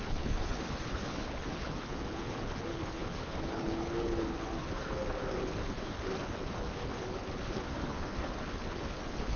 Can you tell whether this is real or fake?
fake